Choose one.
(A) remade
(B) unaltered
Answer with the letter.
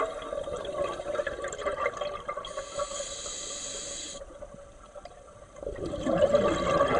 B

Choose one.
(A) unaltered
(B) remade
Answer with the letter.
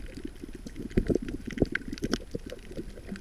A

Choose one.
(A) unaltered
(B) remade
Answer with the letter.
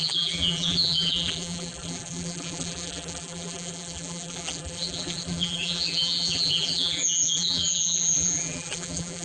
B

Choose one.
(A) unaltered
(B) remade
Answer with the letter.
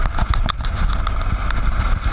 A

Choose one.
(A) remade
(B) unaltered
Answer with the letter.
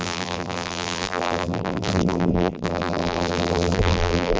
A